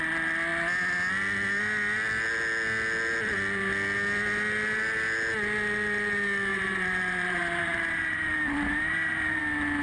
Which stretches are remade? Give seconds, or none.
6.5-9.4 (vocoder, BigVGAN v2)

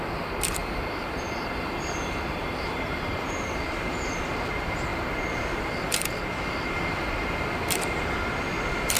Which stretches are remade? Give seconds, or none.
0.6-3.5 (vocoder, BigVGAN v2)

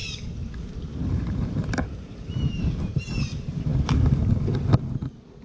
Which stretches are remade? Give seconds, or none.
0.0-3.2 (vocoder, BigVGAN v2)

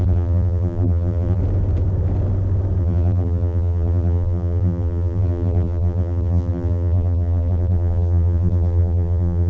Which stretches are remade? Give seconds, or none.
0.0-1.4 (vocoder, BigVGAN v2); 2.8-9.5

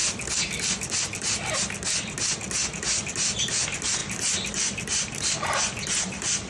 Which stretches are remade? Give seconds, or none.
0.0-1.6 (vocoder, BigVGAN v2); 4.0-6.5

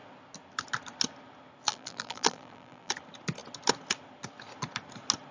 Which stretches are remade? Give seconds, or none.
1.7-2.9 (vocoder, BigVGAN v2)

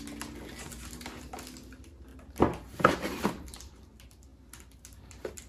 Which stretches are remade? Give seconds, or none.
2.1-3.2 (vocoder, BigVGAN v2)

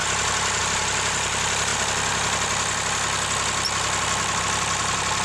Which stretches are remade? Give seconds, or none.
none